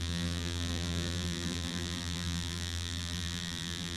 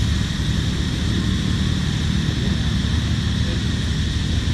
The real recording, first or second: second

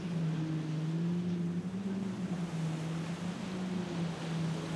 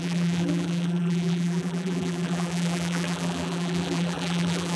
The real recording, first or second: first